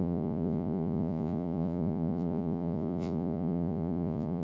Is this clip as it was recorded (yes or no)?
no